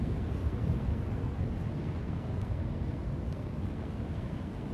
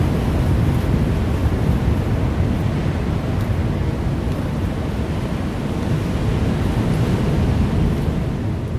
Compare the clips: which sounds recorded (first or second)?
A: second